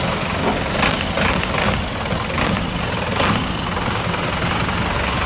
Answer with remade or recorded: recorded